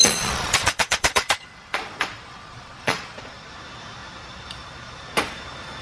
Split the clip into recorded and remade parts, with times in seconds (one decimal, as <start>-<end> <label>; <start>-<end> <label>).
0.0-3.5 remade; 3.5-5.8 recorded